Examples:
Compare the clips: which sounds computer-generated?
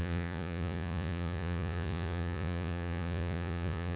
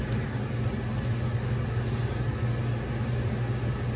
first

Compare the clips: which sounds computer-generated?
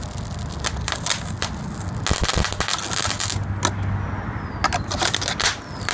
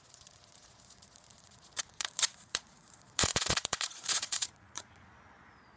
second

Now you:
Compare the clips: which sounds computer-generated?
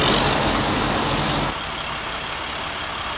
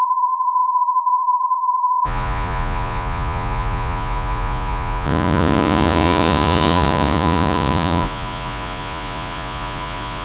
second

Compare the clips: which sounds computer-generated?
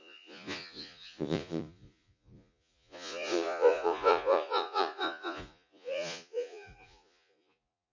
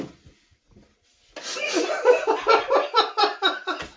first